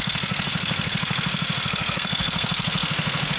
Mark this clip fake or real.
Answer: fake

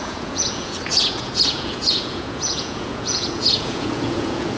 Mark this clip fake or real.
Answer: fake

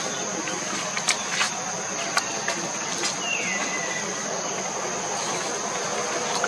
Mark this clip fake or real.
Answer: real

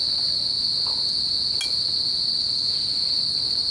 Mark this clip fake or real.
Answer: real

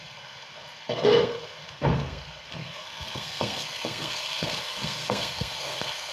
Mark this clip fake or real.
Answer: fake